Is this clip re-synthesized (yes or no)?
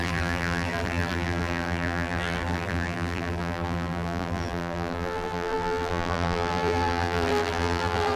yes